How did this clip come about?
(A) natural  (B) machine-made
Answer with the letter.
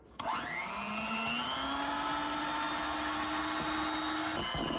A